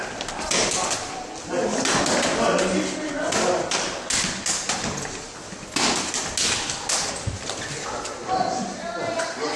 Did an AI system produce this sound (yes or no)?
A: no